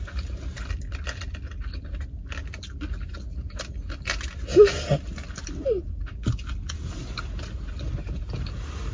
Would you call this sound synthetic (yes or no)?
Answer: no